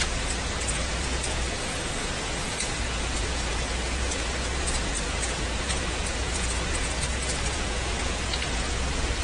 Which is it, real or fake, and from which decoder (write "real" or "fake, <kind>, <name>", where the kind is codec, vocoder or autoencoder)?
fake, vocoder, Vocos